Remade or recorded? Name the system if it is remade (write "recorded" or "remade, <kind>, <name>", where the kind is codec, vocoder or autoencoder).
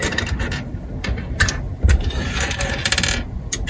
recorded